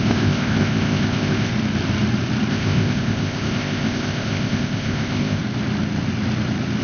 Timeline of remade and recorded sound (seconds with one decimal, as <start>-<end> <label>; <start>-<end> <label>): 0.0-1.5 remade; 1.5-2.5 recorded; 2.5-5.4 remade; 5.4-6.8 recorded